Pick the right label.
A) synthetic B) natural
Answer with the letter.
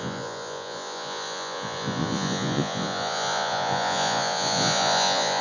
A